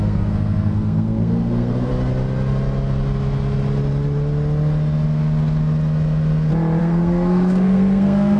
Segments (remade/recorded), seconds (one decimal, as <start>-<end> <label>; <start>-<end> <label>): 0.0-1.9 remade; 1.9-6.8 recorded; 6.8-8.4 remade